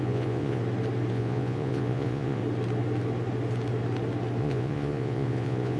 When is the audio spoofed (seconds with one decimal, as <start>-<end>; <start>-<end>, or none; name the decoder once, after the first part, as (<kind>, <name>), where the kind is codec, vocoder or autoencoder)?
0.0-0.6 (vocoder, Vocos); 1.1-2.4; 4.4-5.8